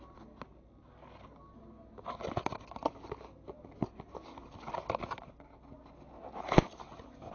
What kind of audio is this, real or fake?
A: real